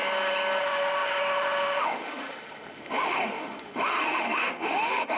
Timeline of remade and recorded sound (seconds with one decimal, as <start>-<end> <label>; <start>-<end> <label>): 0.0-0.6 recorded; 0.6-5.2 remade